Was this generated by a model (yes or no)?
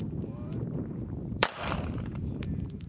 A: yes